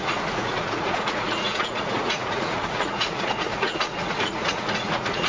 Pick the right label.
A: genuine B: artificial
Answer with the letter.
B